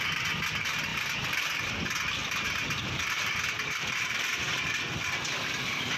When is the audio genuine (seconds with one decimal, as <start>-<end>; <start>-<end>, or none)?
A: 0.0-0.9; 1.7-2.2; 4.7-6.0